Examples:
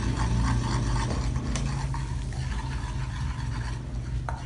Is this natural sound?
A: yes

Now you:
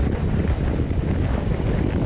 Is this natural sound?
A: yes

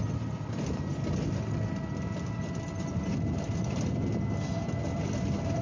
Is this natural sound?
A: yes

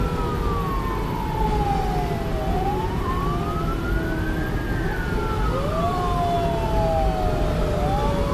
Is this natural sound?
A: yes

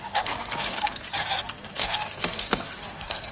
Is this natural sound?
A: no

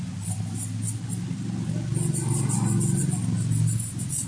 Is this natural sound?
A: yes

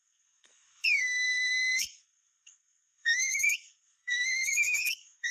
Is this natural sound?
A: no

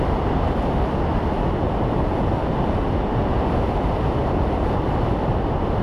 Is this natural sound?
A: yes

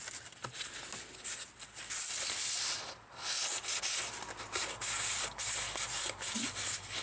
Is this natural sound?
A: yes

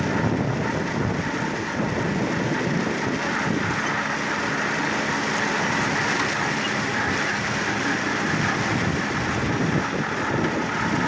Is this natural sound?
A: yes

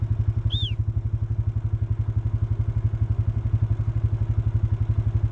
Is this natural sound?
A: yes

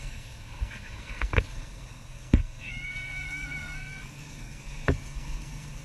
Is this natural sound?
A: no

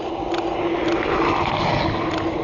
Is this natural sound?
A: yes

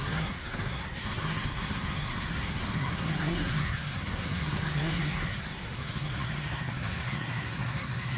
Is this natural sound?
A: no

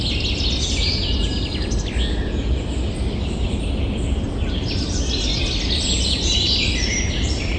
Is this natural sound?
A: yes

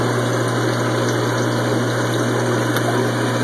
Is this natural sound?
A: yes